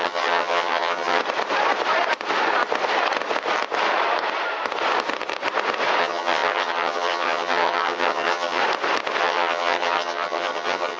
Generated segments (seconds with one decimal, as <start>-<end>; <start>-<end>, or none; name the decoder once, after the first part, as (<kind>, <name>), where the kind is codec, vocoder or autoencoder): 0.0-1.2 (vocoder, HiFi-GAN); 6.0-8.6; 9.2-11.0